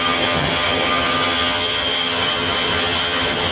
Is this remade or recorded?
remade